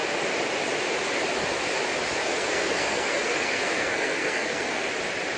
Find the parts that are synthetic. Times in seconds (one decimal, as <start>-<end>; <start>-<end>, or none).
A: 2.2-4.9